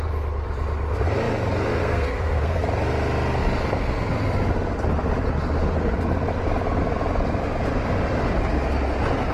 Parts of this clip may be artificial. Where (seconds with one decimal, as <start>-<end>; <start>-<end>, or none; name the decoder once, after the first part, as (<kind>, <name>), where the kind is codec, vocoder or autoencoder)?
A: 1.8-2.6 (codec, SNAC)